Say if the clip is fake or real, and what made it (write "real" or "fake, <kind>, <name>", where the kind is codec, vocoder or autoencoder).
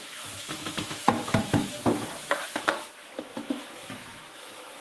fake, autoencoder, DAC-VAE